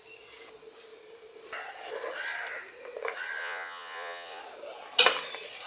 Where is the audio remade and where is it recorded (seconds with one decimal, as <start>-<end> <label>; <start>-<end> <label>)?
0.0-3.4 recorded; 3.4-4.4 remade; 4.4-5.7 recorded